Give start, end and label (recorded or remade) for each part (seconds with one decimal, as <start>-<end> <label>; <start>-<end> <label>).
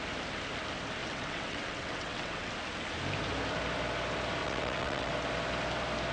0.0-1.0 recorded; 1.0-2.5 remade; 2.5-4.4 recorded; 4.4-5.1 remade; 5.1-6.1 recorded